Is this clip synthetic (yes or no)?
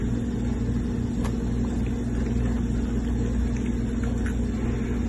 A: no